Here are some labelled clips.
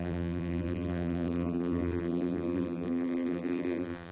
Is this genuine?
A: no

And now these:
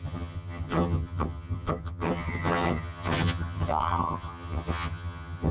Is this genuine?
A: no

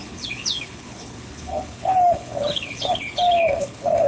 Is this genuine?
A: no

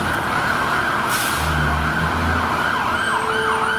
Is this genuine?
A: yes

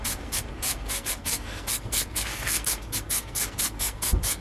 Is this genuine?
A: no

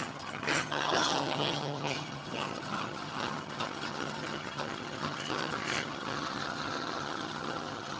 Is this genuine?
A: no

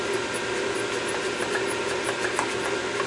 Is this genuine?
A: yes